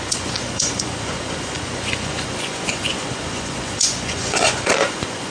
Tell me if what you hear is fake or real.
fake